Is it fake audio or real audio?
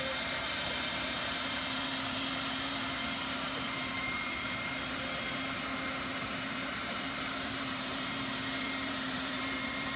fake